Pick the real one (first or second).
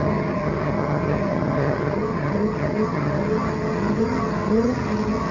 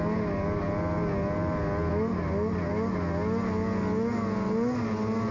second